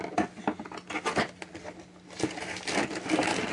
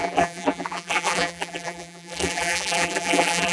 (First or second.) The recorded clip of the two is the first